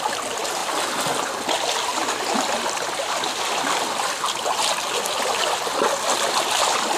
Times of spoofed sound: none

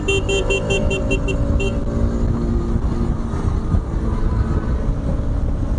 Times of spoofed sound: none

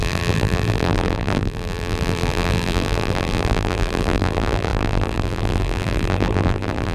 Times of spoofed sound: 0.0-6.9 (vocoder, BigVGAN v2)

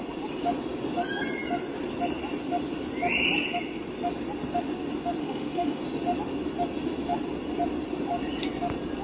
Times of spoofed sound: 5.2-5.8 (autoencoder, DAC-VAE)

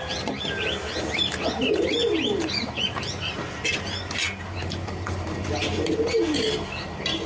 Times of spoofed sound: none

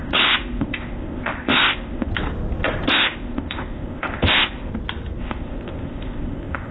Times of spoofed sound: 0.0-2.1 (codec, ZipCodec); 2.9-4.7; 5.2-6.7

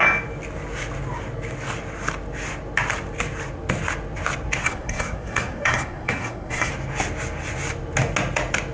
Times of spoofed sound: 4.6-6.7 (codec, SNAC)

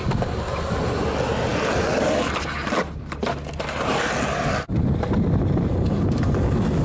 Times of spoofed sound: none